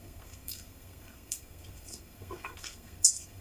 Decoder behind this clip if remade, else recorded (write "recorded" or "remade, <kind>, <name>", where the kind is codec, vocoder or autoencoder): remade, codec, SNAC